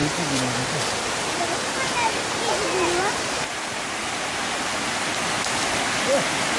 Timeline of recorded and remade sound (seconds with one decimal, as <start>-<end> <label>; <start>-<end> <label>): 0.0-6.6 recorded